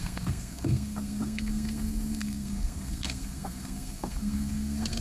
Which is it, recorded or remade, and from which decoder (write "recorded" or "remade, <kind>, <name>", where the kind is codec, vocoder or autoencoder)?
remade, codec, SNAC